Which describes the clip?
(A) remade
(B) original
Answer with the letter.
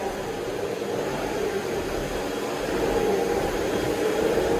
A